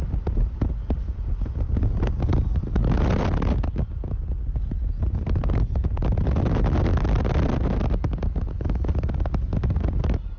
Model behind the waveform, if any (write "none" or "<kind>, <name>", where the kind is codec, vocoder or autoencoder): none